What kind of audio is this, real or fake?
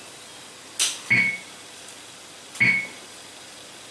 real